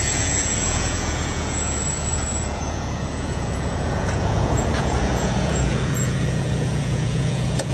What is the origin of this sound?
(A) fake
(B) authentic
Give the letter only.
A